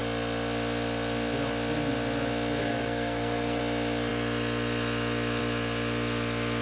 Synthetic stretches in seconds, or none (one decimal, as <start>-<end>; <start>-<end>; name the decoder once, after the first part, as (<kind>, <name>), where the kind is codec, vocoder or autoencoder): 2.6-3.6 (codec, SNAC)